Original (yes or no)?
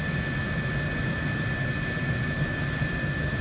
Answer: yes